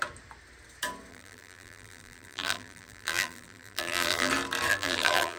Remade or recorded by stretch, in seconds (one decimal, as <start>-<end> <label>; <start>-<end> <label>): 0.0-1.1 recorded; 1.1-4.3 remade; 4.3-4.7 recorded; 4.7-5.4 remade